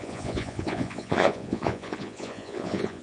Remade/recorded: remade